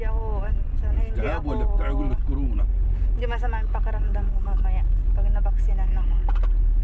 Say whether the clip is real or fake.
real